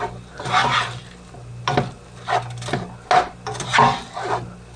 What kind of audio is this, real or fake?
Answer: real